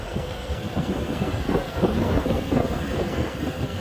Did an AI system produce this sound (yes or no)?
yes